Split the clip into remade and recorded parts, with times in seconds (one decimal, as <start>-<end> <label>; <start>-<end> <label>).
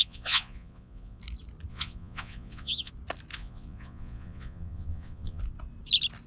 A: 0.0-1.2 remade; 1.2-1.7 recorded; 1.7-2.9 remade; 2.9-3.3 recorded; 3.3-5.4 remade; 5.4-6.3 recorded